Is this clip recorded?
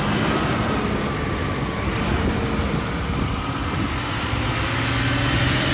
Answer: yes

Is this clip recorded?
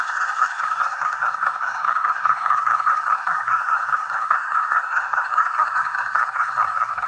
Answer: no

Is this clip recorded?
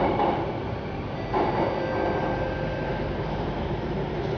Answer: yes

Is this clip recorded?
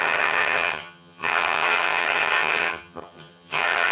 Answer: no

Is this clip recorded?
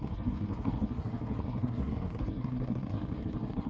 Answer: no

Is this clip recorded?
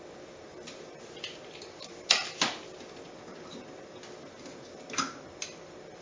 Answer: yes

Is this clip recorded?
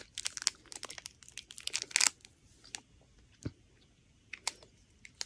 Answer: yes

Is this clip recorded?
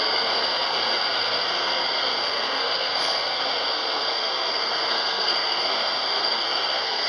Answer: no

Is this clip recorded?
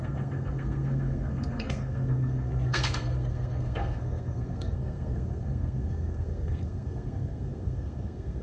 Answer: no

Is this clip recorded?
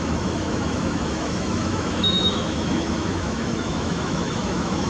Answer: no